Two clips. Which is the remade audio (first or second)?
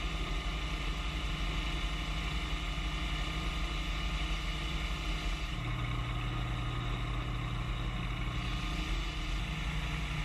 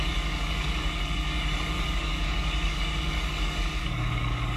second